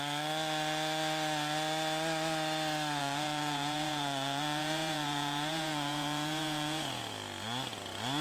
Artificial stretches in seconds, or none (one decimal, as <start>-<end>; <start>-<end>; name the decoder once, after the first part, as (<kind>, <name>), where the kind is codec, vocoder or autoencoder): 3.0-7.0 (vocoder, Vocos)